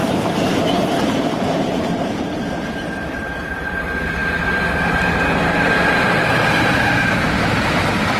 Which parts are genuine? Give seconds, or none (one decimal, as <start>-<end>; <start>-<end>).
2.7-5.8; 6.9-8.2